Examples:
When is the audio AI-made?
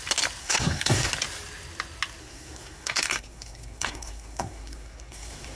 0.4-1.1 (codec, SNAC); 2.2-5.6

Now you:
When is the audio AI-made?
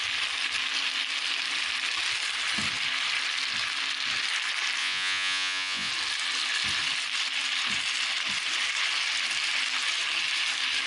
4.8-5.9 (vocoder, Vocos)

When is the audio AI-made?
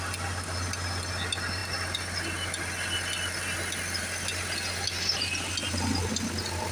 none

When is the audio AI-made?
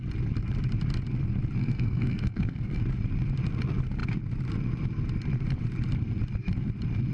1.6-2.8 (codec, SNAC)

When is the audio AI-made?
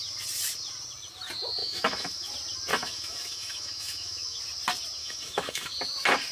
1.6-2.3 (autoencoder, DAC-VAE); 2.7-4.4; 5.0-5.7